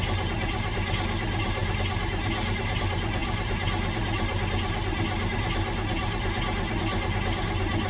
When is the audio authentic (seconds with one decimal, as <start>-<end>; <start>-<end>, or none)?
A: 0.0-7.9